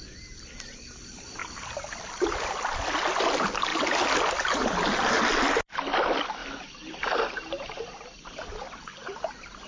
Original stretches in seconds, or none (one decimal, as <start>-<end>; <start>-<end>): 0.0-1.4; 2.3-6.4; 7.2-9.7